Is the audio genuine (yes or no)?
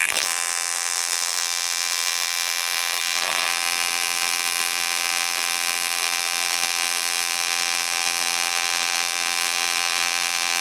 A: no